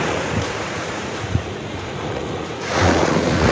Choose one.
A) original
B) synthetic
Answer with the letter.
B